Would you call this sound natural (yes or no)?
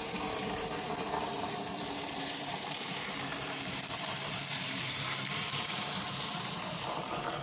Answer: no